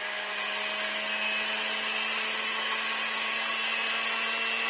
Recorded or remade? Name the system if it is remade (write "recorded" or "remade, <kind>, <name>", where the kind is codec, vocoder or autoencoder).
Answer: recorded